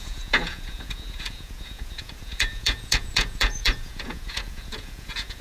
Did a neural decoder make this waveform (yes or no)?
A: yes